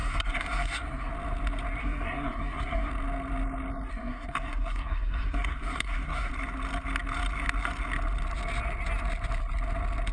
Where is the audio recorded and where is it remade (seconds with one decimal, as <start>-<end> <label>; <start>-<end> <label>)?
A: 0.0-1.1 remade; 1.1-1.8 recorded; 1.8-2.9 remade; 2.9-3.9 recorded; 3.9-6.3 remade; 6.3-10.1 recorded